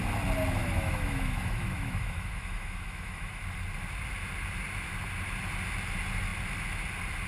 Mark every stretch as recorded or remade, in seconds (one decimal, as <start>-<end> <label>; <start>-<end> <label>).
0.0-0.6 recorded; 0.6-3.4 remade; 3.4-7.3 recorded